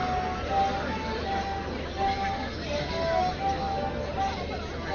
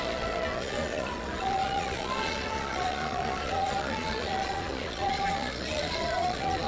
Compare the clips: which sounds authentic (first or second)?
first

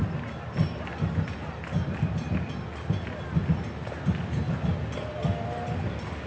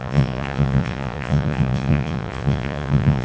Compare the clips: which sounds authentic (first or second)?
first